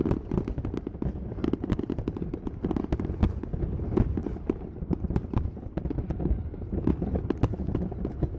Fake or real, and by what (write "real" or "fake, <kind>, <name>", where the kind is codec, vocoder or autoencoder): real